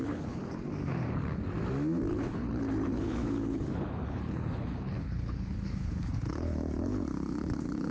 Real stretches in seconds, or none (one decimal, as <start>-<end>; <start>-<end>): 0.4-2.1